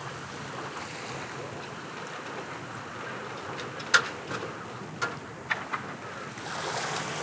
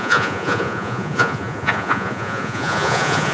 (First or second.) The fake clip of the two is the second